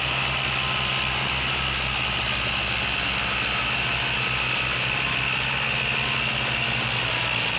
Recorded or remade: recorded